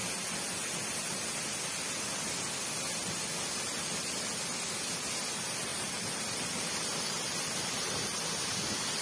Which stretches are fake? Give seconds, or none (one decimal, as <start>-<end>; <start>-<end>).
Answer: 5.7-8.3

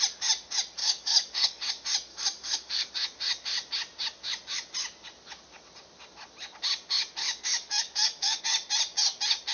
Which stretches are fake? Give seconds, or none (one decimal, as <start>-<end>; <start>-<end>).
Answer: 0.8-1.7; 2.1-2.9; 7.2-8.4

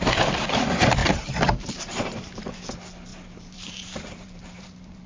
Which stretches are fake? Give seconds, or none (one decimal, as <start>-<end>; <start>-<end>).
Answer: 1.0-2.6; 3.1-5.1

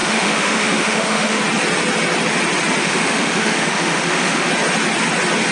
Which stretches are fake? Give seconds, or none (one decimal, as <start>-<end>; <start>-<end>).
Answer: 0.0-1.4; 2.8-4.5

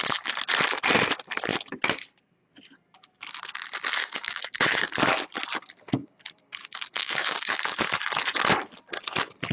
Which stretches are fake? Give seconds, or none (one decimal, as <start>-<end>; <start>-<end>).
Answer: 4.0-5.0; 7.0-7.8